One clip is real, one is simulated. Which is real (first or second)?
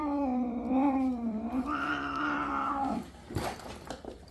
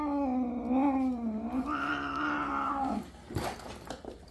second